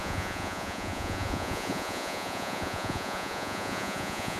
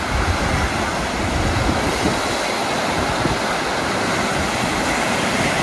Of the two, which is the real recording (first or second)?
second